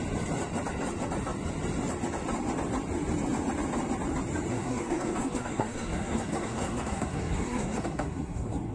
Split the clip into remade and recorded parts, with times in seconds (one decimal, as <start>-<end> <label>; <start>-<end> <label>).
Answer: 0.0-4.5 recorded; 4.5-8.7 remade

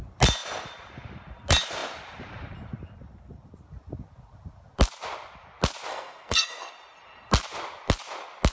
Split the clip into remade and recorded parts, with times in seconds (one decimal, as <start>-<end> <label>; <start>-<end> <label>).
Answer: 0.0-5.9 recorded; 5.9-6.7 remade; 6.7-8.5 recorded

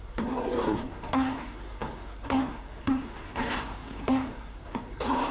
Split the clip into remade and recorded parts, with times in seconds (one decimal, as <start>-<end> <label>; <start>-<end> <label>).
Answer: 0.0-5.3 remade